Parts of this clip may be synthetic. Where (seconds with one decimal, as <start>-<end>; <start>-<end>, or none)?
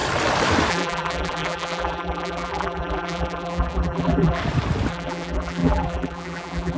0.7-4.4; 4.9-6.8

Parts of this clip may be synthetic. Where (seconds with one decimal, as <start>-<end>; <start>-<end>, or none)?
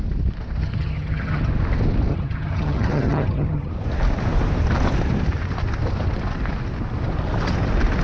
0.6-1.5; 2.1-3.7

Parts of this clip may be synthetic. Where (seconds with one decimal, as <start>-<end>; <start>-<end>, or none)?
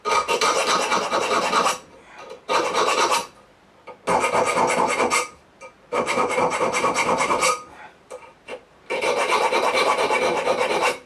0.0-0.6; 1.2-3.2; 4.8-11.1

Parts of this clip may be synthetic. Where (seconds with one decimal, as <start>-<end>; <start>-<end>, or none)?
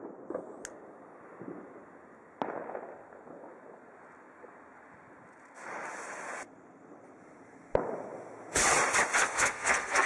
9.2-10.1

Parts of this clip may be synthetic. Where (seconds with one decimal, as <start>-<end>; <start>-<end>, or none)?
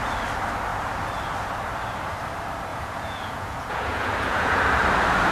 2.7-4.6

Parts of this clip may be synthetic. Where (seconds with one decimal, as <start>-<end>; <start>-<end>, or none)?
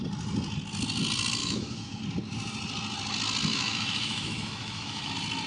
1.4-2.0; 3.5-5.1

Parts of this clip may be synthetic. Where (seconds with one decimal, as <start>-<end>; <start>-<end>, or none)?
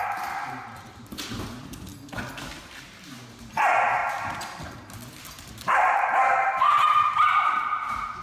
0.0-1.9; 2.6-4.0; 5.2-8.2